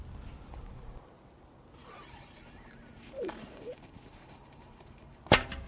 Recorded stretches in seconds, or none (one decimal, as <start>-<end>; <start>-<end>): 0.0-1.8; 5.2-5.7